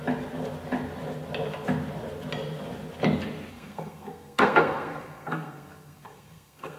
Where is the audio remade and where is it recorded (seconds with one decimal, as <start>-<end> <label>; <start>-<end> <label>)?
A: 0.0-3.5 recorded; 3.5-6.8 remade